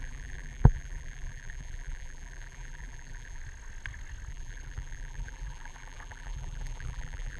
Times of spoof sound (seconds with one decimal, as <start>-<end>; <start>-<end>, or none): 0.0-3.4; 4.3-7.4